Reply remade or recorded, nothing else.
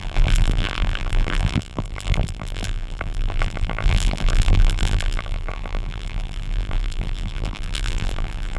remade